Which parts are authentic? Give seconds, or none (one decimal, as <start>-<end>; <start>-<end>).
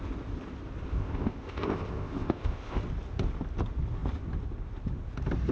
0.0-0.9; 2.8-5.5